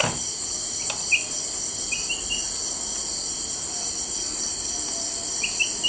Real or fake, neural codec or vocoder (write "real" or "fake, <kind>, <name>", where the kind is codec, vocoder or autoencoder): real